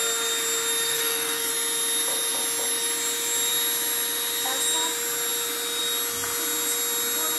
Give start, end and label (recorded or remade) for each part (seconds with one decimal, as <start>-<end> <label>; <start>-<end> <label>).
0.0-0.9 recorded; 0.9-1.5 remade; 1.5-7.4 recorded

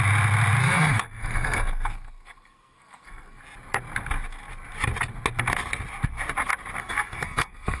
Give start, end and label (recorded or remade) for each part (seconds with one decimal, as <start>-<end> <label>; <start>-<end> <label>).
0.0-0.6 recorded; 0.6-3.4 remade; 3.4-6.8 recorded; 6.8-7.8 remade

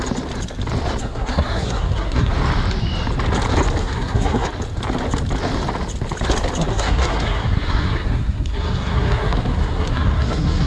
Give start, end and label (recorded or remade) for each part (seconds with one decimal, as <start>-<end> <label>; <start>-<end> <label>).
0.0-1.0 recorded; 1.0-2.3 remade; 2.3-3.8 recorded; 3.8-4.5 remade; 4.5-6.7 recorded; 6.7-10.7 remade

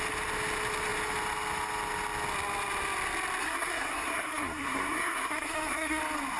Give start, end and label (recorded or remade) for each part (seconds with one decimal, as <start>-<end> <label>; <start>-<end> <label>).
0.0-3.4 recorded; 3.4-6.0 remade; 6.0-6.4 recorded

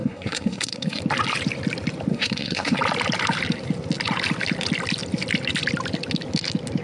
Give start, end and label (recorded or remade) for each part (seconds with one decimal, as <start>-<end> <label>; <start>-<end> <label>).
0.0-1.0 remade; 1.0-2.1 recorded; 2.1-2.8 remade; 2.8-6.8 recorded

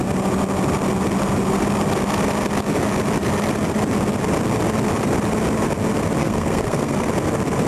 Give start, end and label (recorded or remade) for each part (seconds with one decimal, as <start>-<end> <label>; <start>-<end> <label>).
0.0-6.2 recorded; 6.2-7.1 remade; 7.1-7.7 recorded

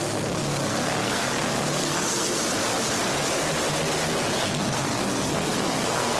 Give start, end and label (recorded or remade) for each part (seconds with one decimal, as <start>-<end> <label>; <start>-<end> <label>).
0.0-2.4 remade; 2.4-4.4 recorded; 4.4-6.2 remade